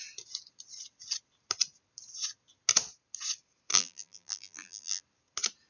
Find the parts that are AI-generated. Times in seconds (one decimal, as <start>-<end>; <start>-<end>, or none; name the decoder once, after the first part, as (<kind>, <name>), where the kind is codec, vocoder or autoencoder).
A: 3.7-5.0 (vocoder, BigVGAN v2)